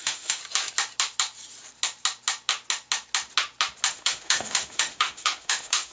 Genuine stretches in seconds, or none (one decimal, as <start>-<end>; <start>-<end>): 0.4-3.9